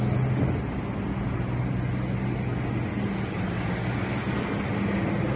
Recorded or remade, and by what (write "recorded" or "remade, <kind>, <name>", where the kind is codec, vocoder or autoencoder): recorded